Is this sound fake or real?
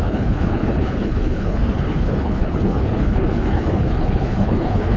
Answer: fake